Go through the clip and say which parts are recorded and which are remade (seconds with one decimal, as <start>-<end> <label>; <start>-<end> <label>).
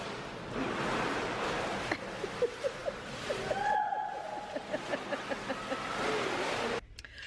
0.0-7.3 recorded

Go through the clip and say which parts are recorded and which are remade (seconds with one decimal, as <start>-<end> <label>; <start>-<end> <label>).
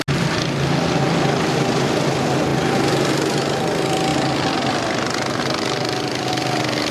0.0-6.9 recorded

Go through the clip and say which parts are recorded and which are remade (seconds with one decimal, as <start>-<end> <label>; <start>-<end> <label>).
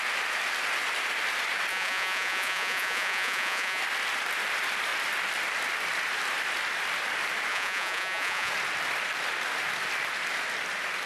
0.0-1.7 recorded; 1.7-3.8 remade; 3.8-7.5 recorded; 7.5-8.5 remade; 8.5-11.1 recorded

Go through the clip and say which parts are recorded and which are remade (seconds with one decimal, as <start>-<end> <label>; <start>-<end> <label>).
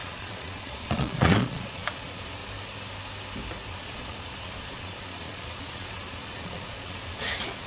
0.0-2.4 remade; 2.4-3.7 recorded; 3.7-7.7 remade